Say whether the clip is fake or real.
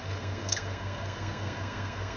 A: fake